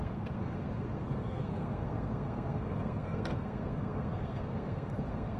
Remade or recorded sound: remade